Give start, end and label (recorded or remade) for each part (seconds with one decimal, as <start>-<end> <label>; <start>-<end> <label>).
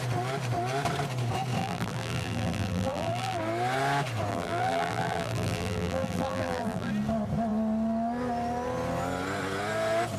0.0-1.6 recorded; 1.6-3.4 remade; 3.4-4.3 recorded; 4.3-6.9 remade; 6.9-10.2 recorded